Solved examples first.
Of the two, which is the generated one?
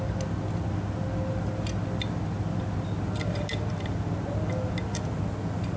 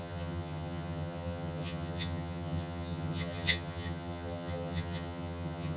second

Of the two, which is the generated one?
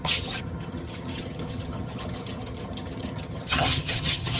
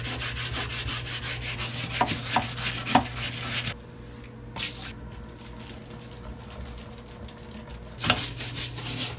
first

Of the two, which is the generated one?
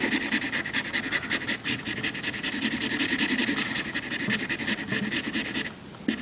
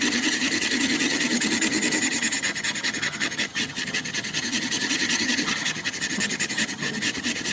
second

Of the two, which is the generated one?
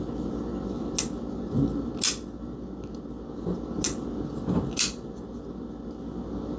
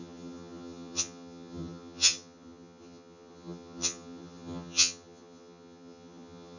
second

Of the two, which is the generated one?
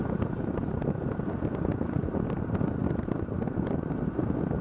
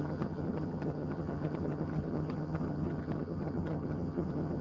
second